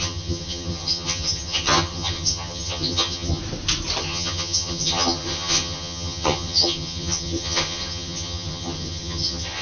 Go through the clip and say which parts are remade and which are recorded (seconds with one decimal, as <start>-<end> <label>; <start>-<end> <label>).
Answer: 0.0-3.4 remade; 3.4-4.0 recorded; 4.0-9.6 remade